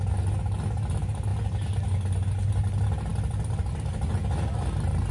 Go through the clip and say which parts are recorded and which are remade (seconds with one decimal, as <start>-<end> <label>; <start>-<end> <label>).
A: 0.0-3.1 recorded; 3.1-4.1 remade; 4.1-5.1 recorded